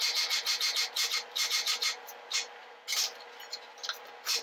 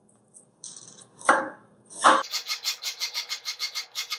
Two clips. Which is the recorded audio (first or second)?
first